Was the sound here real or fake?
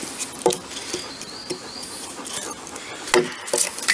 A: real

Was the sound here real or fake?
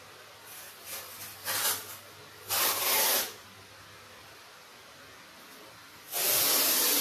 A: real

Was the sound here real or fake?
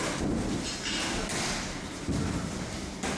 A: real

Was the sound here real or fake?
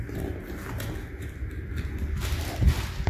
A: real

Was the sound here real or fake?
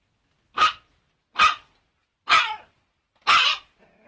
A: real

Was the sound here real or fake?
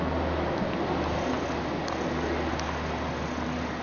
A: real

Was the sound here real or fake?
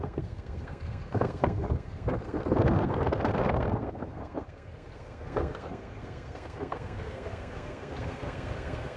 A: fake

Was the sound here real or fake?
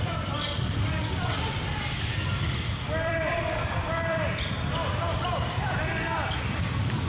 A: fake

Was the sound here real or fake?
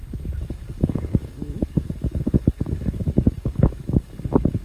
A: fake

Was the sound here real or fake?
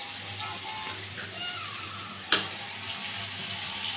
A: real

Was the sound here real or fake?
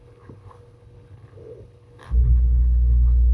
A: fake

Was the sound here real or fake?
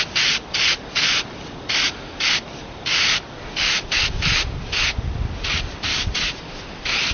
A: fake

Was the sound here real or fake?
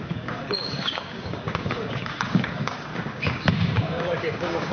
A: fake